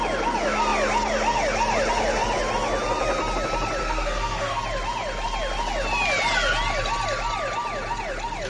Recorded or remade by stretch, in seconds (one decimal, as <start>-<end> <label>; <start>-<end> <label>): 0.0-3.8 recorded; 3.8-4.6 remade; 4.6-8.5 recorded

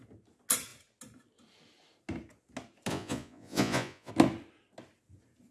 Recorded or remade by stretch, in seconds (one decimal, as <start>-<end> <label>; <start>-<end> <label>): 0.0-2.9 recorded; 2.9-4.1 remade; 4.1-5.5 recorded